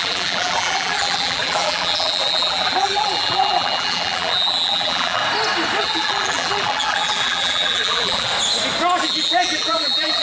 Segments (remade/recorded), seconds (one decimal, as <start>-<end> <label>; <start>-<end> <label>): 0.0-5.2 remade; 5.2-5.8 recorded; 5.8-8.3 remade; 8.3-9.0 recorded; 9.0-10.2 remade